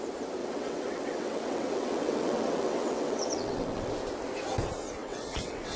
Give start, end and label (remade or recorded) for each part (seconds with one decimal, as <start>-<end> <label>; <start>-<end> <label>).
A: 0.0-0.4 recorded; 0.4-3.9 remade; 3.9-5.0 recorded; 5.0-5.8 remade